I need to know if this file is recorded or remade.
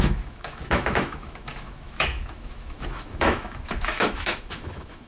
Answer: remade